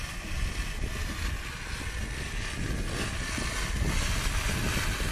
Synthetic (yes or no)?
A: no